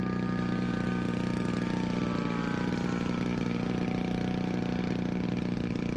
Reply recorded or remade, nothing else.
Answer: recorded